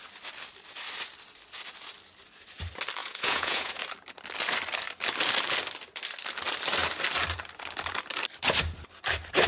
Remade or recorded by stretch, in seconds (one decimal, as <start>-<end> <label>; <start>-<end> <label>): 0.0-3.0 recorded; 3.0-3.8 remade; 3.8-9.5 recorded